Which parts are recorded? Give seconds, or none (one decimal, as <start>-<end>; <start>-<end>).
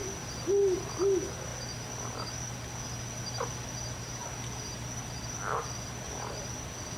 0.0-7.0